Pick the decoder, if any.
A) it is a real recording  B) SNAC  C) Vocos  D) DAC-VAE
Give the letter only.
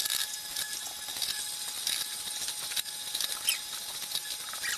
A